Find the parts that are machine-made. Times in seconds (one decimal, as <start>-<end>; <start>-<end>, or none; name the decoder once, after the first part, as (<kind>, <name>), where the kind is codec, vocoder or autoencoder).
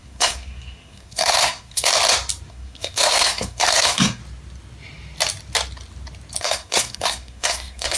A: 0.0-1.9 (codec, SNAC); 2.5-4.2; 6.4-8.0